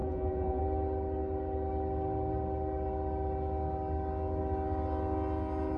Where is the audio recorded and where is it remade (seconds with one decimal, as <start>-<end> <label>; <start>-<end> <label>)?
0.0-0.6 remade; 0.6-5.8 recorded